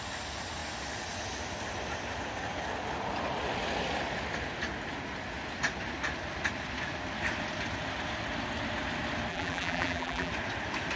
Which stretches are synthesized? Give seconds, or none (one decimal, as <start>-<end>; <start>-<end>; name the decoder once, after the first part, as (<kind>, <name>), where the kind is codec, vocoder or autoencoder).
9.3-10.3 (vocoder, BigVGAN v2)